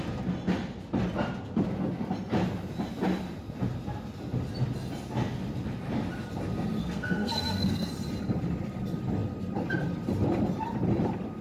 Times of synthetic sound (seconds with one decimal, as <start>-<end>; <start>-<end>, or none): 6.8-7.9